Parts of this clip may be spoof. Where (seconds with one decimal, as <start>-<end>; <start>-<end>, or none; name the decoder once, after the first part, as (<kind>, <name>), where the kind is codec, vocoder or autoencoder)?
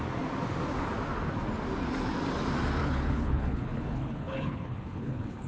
2.8-5.5 (codec, HILCodec)